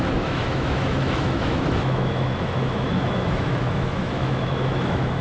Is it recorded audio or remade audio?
remade